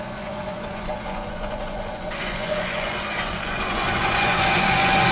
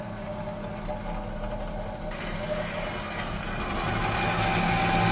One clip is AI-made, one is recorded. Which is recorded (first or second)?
second